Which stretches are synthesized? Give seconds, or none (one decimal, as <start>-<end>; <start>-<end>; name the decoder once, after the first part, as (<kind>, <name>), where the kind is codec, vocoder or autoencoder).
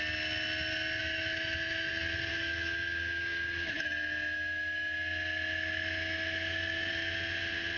1.0-1.9 (autoencoder, DAC-VAE); 2.3-6.9